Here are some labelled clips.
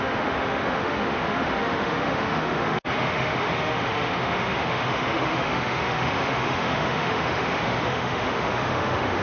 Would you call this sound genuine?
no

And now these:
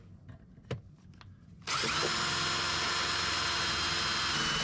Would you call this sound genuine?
yes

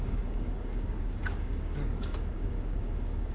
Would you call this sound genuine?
no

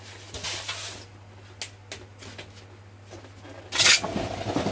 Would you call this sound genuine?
yes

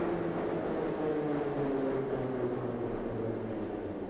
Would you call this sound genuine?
yes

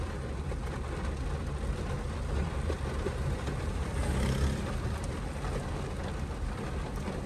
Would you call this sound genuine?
yes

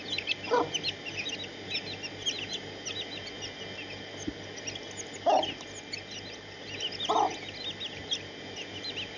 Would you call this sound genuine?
yes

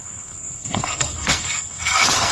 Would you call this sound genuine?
no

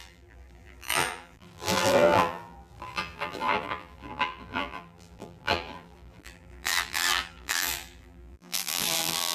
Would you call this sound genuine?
no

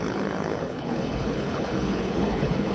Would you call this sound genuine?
no